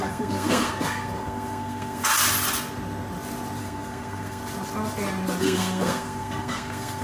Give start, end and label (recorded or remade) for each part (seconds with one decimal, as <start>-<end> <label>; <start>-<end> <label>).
0.0-2.1 remade; 2.1-3.6 recorded; 3.6-4.4 remade; 4.4-5.4 recorded; 5.4-7.0 remade